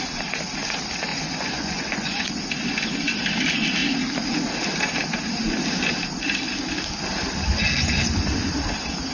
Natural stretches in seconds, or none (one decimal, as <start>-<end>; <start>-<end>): 0.0-1.1; 2.3-9.1